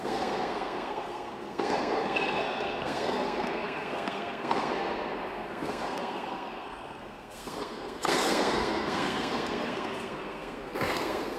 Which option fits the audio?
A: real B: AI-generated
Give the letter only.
B